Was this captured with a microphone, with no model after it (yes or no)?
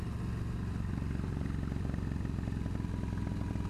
yes